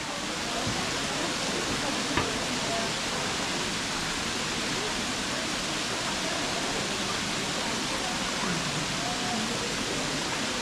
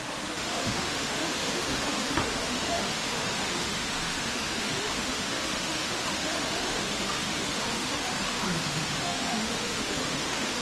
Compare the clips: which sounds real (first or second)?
first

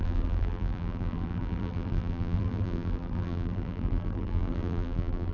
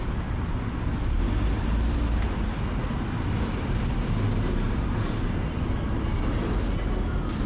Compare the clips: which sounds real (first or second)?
second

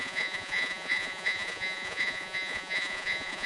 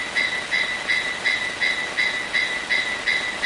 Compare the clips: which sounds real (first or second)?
second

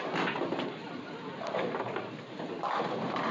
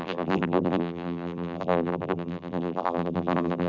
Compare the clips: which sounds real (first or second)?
first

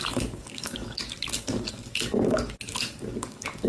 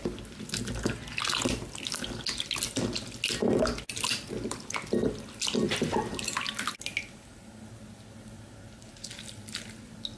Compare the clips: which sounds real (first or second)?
second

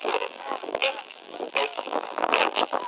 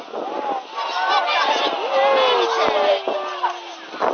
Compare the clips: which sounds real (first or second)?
second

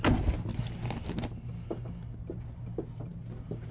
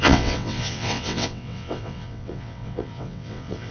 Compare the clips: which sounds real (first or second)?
first